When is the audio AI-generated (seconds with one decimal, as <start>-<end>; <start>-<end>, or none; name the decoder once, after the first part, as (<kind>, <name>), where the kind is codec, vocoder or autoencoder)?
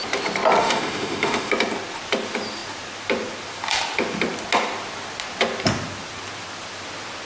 0.6-1.5 (autoencoder, DAC-VAE)